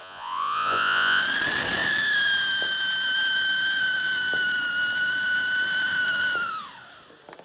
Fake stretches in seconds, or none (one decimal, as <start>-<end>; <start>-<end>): 0.0-1.2